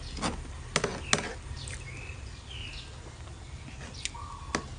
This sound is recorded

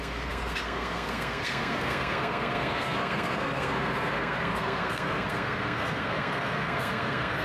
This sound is remade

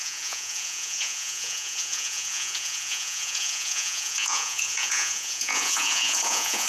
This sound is remade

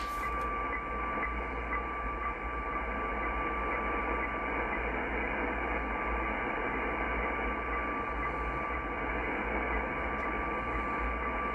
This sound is recorded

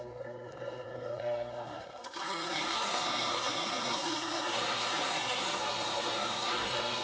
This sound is remade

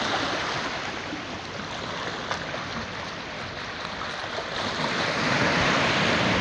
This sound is recorded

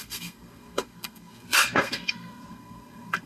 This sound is remade